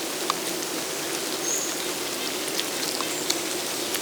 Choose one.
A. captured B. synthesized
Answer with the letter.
A